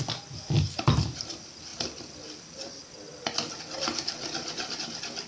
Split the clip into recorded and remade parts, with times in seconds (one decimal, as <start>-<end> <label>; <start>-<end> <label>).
0.0-5.3 recorded